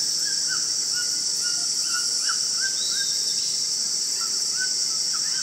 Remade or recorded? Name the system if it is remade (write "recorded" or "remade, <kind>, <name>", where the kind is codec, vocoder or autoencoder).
recorded